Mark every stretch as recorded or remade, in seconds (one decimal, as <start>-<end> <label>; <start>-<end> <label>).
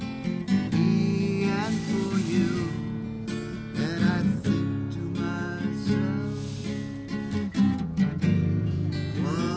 0.0-7.5 recorded; 7.5-9.6 remade